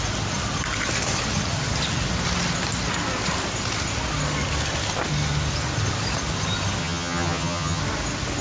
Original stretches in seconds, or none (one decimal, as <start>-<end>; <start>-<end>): 0.0-6.8; 7.8-8.4